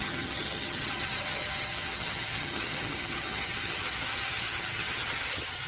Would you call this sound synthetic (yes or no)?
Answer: yes